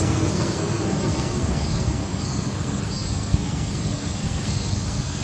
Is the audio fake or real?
fake